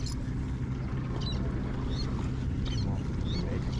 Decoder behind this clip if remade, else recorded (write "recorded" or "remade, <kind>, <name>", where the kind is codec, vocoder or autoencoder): recorded